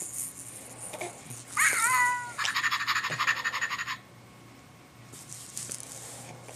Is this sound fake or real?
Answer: real